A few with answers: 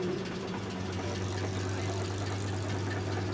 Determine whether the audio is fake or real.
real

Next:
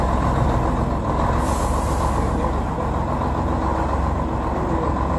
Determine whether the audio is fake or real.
real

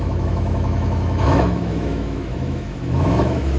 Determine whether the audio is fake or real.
fake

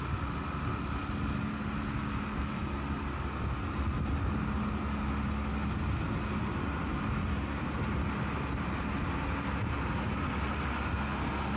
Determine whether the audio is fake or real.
real